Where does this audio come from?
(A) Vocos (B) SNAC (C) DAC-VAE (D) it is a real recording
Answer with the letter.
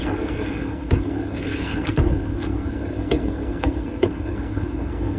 B